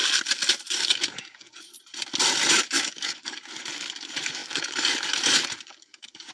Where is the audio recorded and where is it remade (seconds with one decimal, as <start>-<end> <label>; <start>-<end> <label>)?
0.0-0.7 recorded; 0.7-1.7 remade; 1.7-2.6 recorded; 2.6-6.3 remade